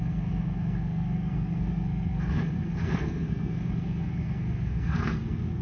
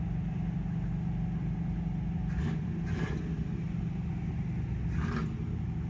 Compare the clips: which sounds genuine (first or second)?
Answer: second